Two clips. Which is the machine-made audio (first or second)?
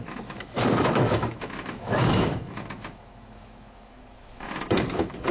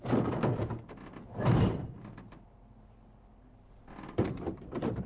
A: first